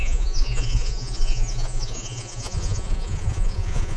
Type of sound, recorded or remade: remade